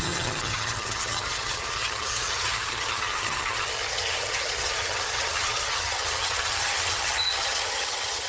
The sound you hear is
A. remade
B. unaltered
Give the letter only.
A